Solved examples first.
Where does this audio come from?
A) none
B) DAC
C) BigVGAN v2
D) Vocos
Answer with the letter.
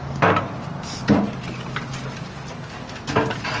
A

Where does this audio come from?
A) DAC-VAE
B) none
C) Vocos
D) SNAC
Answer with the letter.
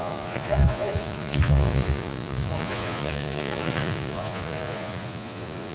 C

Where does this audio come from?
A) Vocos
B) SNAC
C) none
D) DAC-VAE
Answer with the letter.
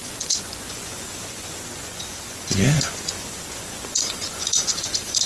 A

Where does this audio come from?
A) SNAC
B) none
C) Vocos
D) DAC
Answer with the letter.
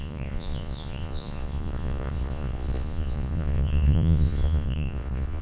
C